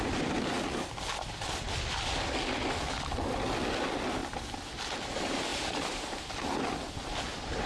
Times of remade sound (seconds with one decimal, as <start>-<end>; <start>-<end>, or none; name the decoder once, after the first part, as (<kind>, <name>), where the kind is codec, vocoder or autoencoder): none